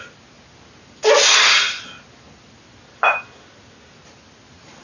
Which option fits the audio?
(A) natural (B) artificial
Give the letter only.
A